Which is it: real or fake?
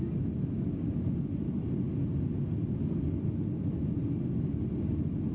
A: real